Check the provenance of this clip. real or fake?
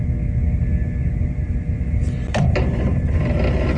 fake